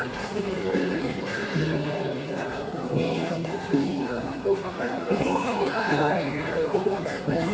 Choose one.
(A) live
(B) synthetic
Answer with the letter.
B